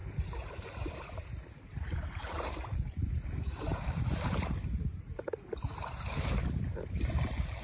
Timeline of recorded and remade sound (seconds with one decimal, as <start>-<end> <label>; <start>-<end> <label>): 0.0-7.6 remade